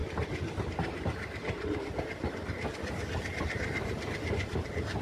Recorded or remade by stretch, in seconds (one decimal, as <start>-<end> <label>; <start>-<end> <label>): 0.0-1.4 recorded; 1.4-2.0 remade; 2.0-5.0 recorded